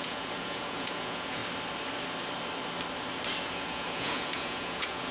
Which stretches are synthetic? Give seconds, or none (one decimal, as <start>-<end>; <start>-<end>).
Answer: 0.0-1.4; 3.4-5.1